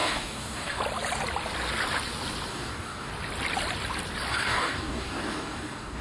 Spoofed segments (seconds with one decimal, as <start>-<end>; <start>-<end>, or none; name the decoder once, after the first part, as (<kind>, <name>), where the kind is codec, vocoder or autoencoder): 0.0-0.8 (codec, DAC); 2.5-3.1; 4.3-6.0